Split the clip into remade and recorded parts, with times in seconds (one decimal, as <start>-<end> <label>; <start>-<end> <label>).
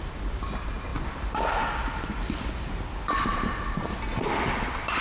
0.0-5.0 recorded